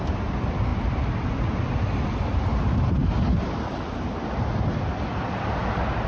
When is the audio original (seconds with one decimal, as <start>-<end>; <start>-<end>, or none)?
0.0-6.1